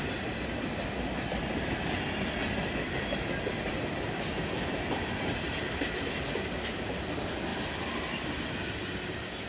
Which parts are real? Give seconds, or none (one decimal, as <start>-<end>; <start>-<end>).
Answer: 0.0-9.5